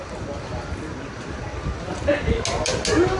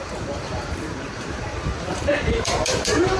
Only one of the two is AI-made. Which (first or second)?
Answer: second